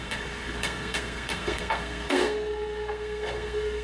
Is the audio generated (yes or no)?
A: yes